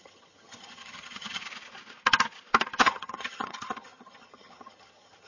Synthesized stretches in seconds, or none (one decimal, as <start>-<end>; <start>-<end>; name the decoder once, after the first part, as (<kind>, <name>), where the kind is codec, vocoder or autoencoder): 0.0-1.4 (vocoder, HiFi-GAN); 2.8-5.3

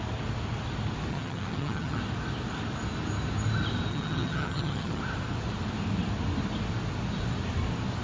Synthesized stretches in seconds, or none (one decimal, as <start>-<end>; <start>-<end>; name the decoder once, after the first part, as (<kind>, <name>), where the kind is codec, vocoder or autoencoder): 1.1-2.0 (vocoder, HiFi-GAN); 3.9-5.0

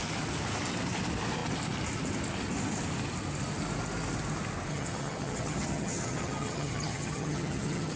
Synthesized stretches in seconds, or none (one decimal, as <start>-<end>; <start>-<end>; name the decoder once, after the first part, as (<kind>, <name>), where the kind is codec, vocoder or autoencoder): 4.7-8.0 (vocoder, HiFi-GAN)

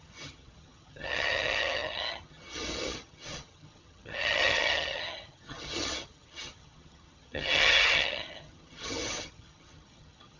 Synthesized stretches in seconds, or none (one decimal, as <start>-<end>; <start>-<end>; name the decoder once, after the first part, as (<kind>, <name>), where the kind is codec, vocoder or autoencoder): 0.0-10.4 (vocoder, HiFi-GAN)

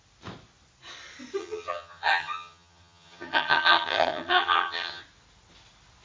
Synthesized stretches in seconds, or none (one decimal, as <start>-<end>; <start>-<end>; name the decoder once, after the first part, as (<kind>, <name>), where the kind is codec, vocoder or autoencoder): 1.4-5.0 (vocoder, HiFi-GAN)

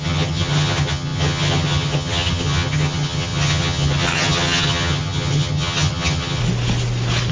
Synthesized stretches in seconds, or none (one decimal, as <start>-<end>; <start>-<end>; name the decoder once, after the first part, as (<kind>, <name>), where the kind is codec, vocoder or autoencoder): 0.0-6.4 (vocoder, HiFi-GAN)

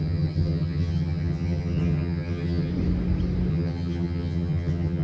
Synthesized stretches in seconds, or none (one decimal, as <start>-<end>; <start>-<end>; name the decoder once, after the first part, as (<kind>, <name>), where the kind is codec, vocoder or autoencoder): 0.0-2.7 (vocoder, HiFi-GAN); 3.5-5.0

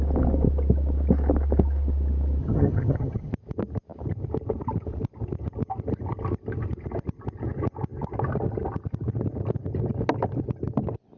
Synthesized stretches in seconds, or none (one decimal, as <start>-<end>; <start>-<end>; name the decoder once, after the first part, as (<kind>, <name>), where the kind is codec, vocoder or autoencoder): 2.4-3.3 (vocoder, HiFi-GAN)